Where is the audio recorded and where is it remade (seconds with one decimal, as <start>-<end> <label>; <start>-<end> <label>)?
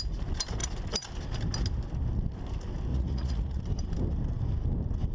0.0-2.9 recorded; 2.9-3.6 remade; 3.6-5.1 recorded